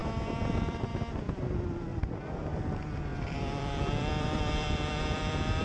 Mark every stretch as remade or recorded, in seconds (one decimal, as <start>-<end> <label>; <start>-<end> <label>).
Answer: 0.0-0.9 remade; 0.9-1.9 recorded; 1.9-2.4 remade; 2.4-3.1 recorded; 3.1-5.6 remade